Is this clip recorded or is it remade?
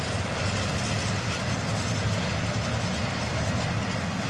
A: recorded